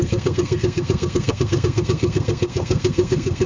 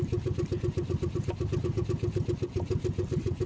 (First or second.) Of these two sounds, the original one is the second